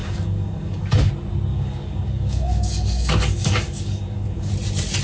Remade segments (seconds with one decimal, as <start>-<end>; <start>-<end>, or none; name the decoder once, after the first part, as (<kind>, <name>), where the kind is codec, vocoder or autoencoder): 0.0-1.1 (codec, DAC); 1.5-4.5